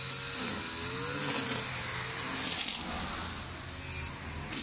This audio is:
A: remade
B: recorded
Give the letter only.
B